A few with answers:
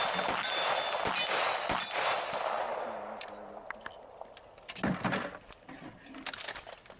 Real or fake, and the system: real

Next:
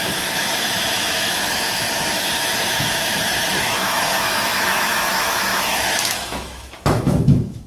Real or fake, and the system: fake, autoencoder, DAC-VAE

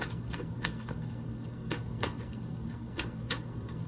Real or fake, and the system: fake, codec, SNAC